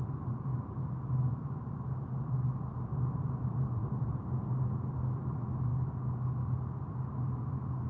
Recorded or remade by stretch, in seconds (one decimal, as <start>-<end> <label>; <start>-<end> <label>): 0.0-0.5 remade; 0.5-1.3 recorded; 1.3-5.7 remade; 5.7-7.1 recorded; 7.1-7.9 remade